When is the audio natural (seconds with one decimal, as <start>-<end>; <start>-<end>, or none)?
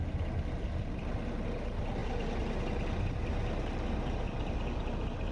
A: 0.0-5.3